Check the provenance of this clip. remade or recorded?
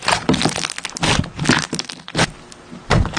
recorded